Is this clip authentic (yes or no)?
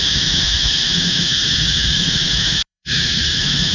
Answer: no